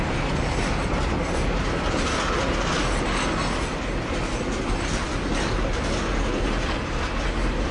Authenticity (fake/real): real